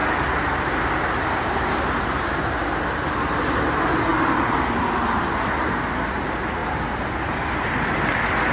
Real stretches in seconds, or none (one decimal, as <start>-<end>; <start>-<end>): 0.0-8.5